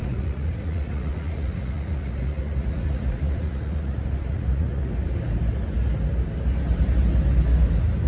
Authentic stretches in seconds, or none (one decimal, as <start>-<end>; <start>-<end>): 4.9-8.1